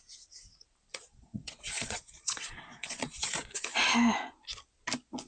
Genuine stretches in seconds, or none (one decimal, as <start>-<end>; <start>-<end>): 0.0-0.9; 3.7-5.3